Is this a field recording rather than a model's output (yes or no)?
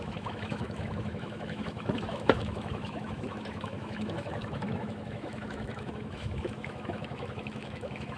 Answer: no